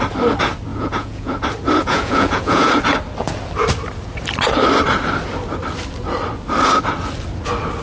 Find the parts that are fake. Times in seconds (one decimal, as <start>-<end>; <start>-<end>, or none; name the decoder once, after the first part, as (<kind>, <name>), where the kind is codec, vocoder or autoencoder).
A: 0.7-1.3 (vocoder, Vocos); 1.8-2.7